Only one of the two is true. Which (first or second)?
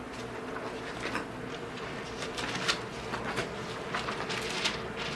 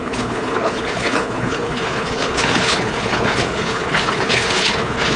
first